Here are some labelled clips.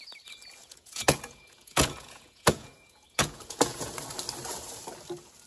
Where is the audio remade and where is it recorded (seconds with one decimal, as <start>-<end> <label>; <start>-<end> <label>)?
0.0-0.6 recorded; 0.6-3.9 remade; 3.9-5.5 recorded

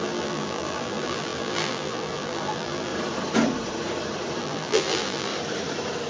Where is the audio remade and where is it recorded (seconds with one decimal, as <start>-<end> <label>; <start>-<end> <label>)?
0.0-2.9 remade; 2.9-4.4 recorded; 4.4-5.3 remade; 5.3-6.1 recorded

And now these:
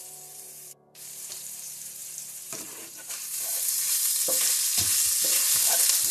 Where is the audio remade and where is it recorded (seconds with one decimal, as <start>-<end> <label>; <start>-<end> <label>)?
0.0-4.7 remade; 4.7-5.3 recorded; 5.3-6.1 remade